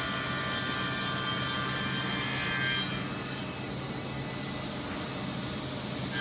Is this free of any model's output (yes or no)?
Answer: yes